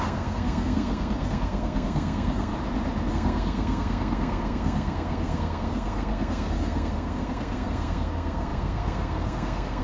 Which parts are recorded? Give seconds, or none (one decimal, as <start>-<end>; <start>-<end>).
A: 2.5-3.1